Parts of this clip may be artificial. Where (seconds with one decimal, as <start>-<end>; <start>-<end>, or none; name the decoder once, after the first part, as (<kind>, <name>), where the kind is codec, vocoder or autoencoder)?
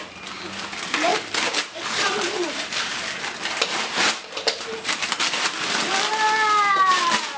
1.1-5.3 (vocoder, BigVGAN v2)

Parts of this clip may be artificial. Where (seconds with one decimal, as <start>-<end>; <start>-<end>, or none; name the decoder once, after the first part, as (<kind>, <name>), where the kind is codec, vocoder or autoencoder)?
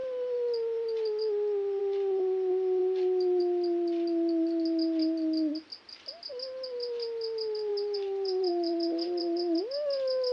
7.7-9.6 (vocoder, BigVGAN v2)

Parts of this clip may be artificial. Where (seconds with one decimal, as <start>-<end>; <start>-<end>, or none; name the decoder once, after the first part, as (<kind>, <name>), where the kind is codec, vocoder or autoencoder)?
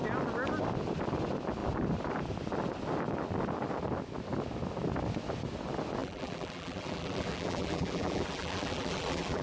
6.0-9.4 (vocoder, BigVGAN v2)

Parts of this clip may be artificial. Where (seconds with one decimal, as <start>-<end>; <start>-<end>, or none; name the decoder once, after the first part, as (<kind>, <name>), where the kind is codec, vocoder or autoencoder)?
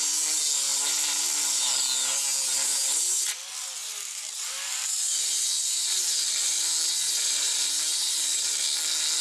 0.7-1.7 (vocoder, BigVGAN v2); 2.7-3.2; 3.8-8.6